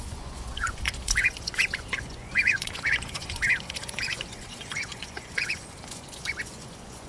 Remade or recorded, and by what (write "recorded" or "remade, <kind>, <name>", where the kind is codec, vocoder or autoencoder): remade, vocoder, Vocos